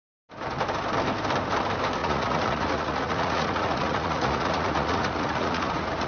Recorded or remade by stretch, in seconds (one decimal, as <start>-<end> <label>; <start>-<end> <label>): 0.0-2.0 recorded; 2.0-6.1 remade